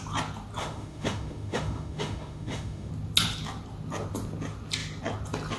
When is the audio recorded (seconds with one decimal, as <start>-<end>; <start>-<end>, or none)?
0.0-0.6; 2.9-5.6